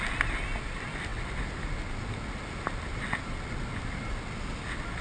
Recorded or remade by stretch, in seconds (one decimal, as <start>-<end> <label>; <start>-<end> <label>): 0.0-5.0 recorded